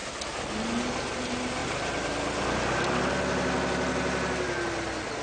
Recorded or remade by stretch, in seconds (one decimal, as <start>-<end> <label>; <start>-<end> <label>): 0.0-5.2 recorded